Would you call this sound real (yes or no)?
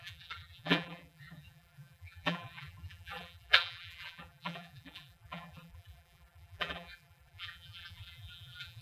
no